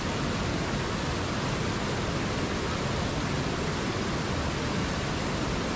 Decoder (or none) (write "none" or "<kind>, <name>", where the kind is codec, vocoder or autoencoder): none